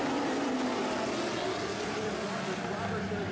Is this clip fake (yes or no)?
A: no